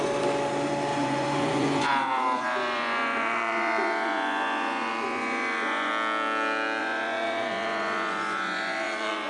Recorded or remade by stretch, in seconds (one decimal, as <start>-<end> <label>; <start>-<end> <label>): 0.0-0.9 recorded; 0.9-5.9 remade; 5.9-6.8 recorded; 6.8-9.3 remade